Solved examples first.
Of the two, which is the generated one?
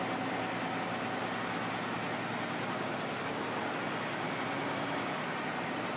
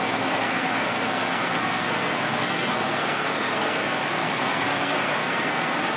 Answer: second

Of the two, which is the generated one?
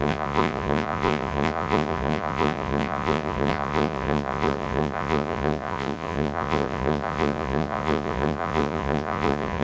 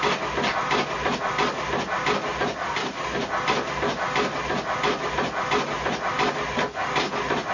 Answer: first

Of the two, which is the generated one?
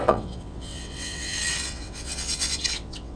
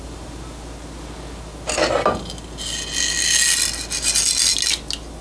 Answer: first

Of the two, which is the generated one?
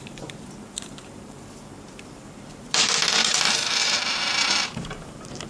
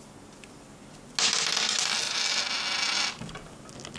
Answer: first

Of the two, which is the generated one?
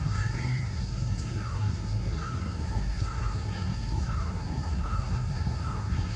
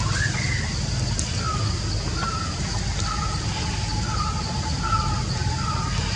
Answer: first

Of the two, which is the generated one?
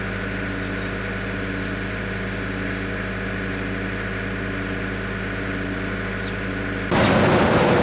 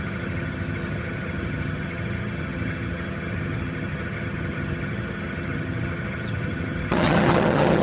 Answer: second